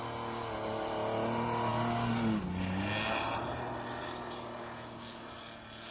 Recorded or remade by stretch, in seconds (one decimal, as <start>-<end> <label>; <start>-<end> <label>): 0.0-5.9 recorded

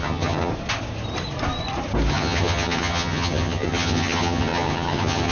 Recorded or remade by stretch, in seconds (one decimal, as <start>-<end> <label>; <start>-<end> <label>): 0.0-0.5 remade; 0.5-2.1 recorded; 2.1-5.3 remade